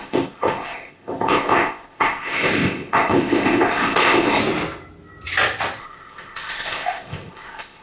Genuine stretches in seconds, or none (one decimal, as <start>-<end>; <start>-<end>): 4.4-5.8